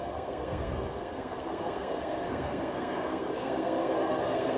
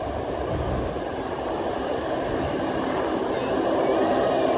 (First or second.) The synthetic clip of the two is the first